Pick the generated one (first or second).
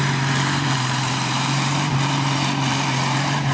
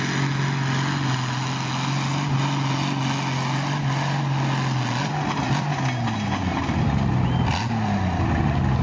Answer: first